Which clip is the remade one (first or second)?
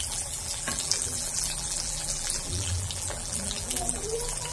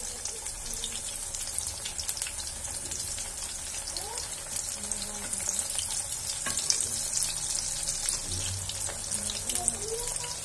first